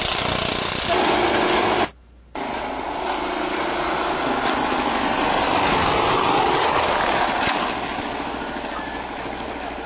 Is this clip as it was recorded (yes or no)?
yes